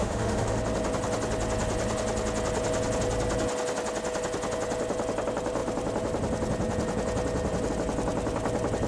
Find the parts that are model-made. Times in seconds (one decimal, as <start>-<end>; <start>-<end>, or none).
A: 0.0-0.6